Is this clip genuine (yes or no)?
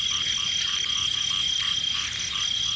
yes